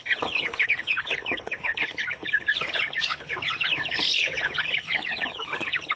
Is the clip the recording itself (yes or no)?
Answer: no